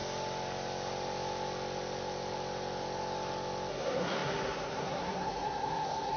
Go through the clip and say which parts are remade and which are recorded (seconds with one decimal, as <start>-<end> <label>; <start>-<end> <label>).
0.0-3.7 recorded; 3.7-6.2 remade